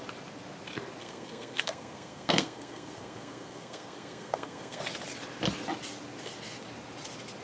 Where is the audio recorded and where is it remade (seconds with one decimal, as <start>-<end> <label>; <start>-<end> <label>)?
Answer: 0.0-1.0 recorded; 1.0-4.8 remade; 4.8-7.4 recorded